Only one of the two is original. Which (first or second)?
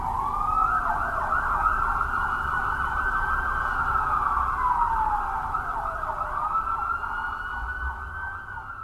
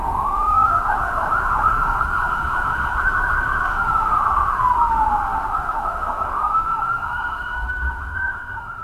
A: first